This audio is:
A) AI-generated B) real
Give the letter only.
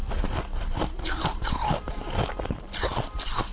B